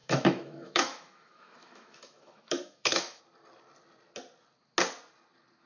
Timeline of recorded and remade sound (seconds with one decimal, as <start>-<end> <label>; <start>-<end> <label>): 0.0-3.2 remade; 3.2-5.7 recorded